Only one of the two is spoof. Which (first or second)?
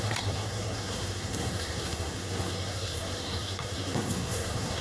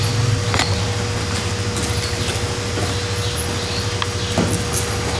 first